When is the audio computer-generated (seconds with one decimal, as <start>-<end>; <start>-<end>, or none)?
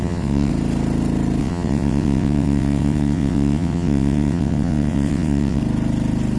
0.0-0.5; 1.4-5.6